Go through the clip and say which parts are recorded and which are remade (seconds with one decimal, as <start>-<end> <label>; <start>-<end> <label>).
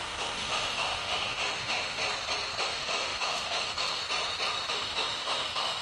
0.0-2.0 remade; 2.0-2.6 recorded; 2.6-4.0 remade; 4.0-4.7 recorded; 4.7-5.8 remade